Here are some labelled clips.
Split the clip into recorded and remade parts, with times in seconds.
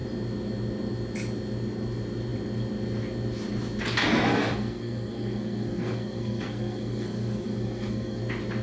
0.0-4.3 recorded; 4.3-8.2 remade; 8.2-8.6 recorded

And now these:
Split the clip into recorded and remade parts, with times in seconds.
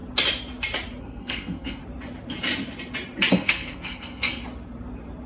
0.0-1.0 recorded; 1.0-1.8 remade; 1.8-3.3 recorded; 3.3-4.4 remade; 4.4-5.3 recorded